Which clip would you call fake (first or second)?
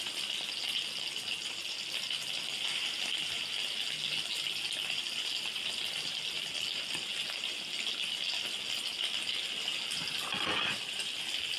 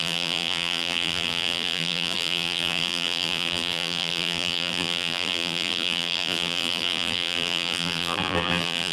second